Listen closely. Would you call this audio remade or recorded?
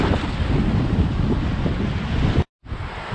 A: recorded